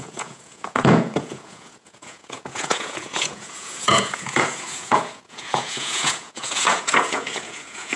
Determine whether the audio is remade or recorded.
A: remade